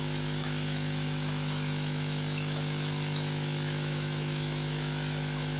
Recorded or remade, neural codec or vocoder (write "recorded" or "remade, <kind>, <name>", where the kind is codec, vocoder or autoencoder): remade, autoencoder, DAC-VAE